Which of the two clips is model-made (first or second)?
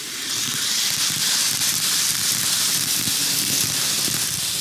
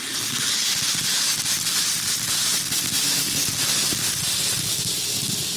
first